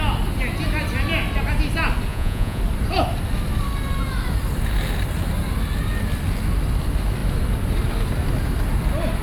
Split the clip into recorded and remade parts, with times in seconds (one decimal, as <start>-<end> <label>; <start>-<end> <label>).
0.0-2.1 recorded; 2.1-2.6 remade; 2.6-9.2 recorded